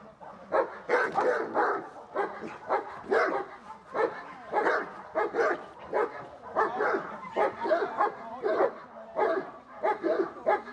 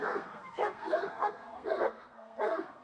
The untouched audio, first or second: first